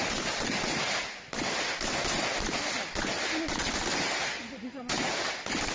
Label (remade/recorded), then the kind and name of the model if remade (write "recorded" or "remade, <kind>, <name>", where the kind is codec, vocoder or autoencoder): recorded